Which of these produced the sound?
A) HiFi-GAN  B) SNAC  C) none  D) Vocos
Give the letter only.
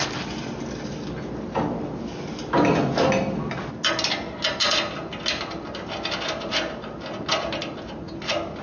C